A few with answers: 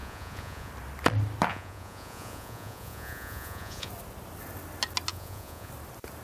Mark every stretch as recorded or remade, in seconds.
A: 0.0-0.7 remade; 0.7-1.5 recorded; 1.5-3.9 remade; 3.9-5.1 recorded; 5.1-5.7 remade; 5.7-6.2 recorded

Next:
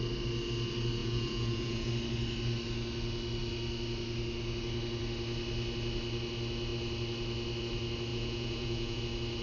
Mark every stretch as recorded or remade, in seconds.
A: 0.0-1.0 recorded; 1.0-1.9 remade; 1.9-8.1 recorded; 8.1-9.0 remade; 9.0-9.4 recorded

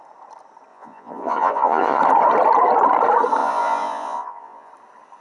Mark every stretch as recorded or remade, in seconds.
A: 0.0-0.7 recorded; 0.7-2.0 remade; 2.0-3.4 recorded; 3.4-4.7 remade; 4.7-5.2 recorded

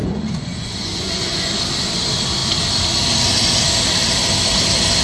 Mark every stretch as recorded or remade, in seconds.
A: 0.0-1.5 remade; 1.5-5.0 recorded

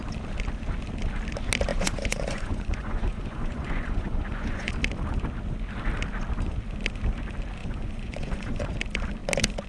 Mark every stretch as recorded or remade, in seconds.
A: 0.0-1.7 recorded; 1.7-4.7 remade; 4.7-7.6 recorded; 7.6-8.7 remade; 8.7-9.7 recorded